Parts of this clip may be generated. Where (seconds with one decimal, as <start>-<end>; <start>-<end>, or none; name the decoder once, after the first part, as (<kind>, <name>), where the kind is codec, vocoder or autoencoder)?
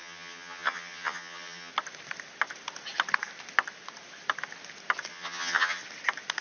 0.0-1.7 (vocoder, HiFi-GAN); 5.1-5.8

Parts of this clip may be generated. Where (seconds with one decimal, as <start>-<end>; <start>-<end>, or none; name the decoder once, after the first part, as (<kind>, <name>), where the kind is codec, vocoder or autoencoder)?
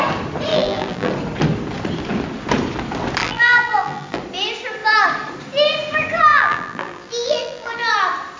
0.5-1.1 (vocoder, BigVGAN v2); 3.2-4.2; 6.3-7.9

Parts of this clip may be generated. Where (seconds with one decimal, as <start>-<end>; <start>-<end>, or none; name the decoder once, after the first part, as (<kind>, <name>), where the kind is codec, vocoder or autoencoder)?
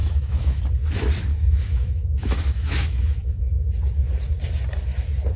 0.0-0.6 (autoencoder, DAC-VAE); 1.3-3.5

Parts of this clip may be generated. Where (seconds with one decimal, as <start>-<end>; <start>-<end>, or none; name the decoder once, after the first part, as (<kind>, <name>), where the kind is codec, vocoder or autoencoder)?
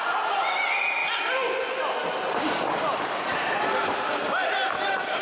none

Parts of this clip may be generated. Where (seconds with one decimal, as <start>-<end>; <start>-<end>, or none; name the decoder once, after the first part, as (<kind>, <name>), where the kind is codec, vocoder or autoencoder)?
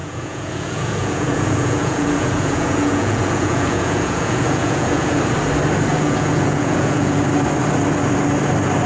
0.0-5.2 (vocoder, Vocos); 5.9-7.2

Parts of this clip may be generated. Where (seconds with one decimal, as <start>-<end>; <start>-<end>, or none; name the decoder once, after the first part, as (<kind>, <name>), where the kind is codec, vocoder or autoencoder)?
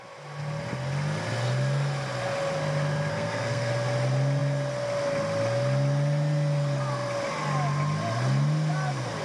3.1-3.7 (codec, SNAC)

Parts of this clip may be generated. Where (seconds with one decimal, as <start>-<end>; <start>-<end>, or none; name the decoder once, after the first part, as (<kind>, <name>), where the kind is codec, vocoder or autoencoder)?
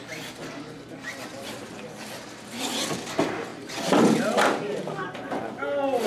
none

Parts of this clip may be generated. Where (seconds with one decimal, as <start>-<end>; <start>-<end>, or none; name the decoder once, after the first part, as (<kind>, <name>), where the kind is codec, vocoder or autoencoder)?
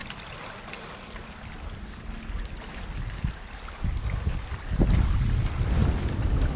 none